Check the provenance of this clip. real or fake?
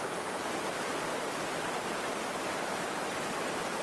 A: real